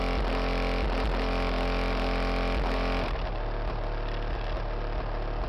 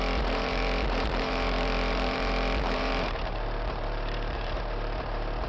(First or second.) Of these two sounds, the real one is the first